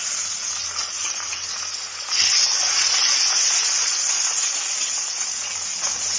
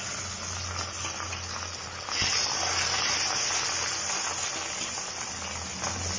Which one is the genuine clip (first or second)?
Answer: second